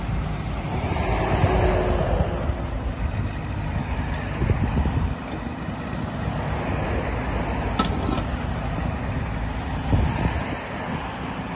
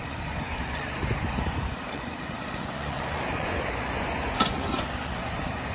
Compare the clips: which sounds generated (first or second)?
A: second